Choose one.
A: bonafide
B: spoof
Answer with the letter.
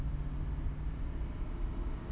A